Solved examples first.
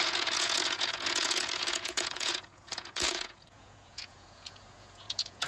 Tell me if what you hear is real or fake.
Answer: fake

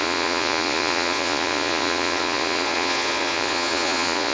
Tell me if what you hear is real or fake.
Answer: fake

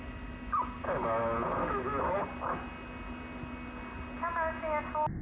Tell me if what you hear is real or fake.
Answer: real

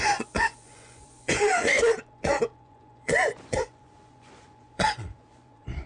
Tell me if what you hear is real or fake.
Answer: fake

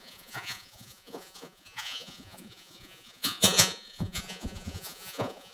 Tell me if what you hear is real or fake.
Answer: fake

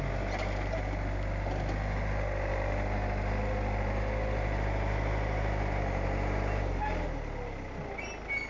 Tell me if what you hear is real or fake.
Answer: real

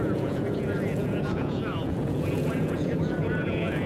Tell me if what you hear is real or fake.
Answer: fake